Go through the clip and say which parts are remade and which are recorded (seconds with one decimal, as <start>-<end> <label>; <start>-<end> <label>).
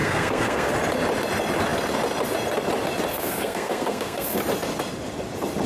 0.0-0.7 remade; 0.7-3.1 recorded; 3.1-4.4 remade; 4.4-5.7 recorded